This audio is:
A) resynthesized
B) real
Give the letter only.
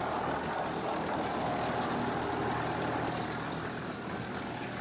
B